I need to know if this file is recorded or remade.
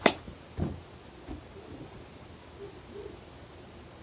recorded